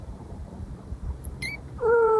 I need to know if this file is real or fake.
fake